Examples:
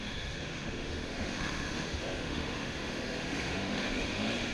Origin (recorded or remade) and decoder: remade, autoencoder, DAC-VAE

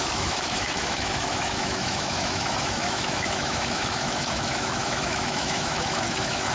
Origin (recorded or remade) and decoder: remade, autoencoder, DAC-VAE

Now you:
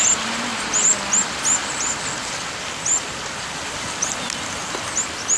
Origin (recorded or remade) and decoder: recorded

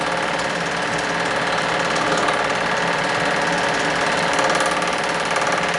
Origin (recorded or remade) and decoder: recorded